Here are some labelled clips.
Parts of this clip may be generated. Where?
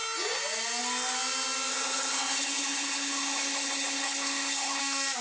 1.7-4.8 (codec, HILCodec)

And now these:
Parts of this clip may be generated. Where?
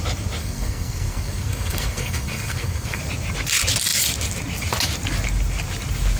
0.4-3.0 (codec, SNAC)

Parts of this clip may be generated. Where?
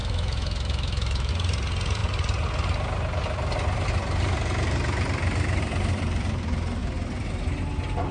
0.0-1.3 (autoencoder, DAC-VAE)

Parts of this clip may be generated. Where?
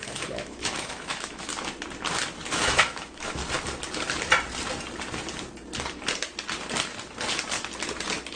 0.0-1.5 (autoencoder, DAC-VAE); 2.5-3.4